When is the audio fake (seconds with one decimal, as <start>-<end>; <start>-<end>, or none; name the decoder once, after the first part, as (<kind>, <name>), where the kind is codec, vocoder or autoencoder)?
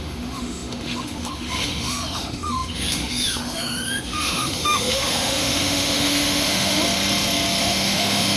0.0-6.8 (autoencoder, DAC-VAE); 7.6-8.4